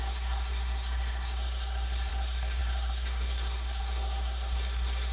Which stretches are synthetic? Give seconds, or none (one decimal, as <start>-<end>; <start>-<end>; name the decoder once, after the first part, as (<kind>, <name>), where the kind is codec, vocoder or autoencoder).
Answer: 0.0-5.1 (codec, SNAC)